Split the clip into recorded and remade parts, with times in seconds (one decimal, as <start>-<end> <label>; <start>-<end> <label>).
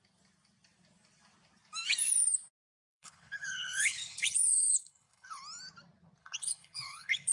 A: 0.0-2.9 recorded; 2.9-5.4 remade; 5.4-6.2 recorded; 6.2-7.3 remade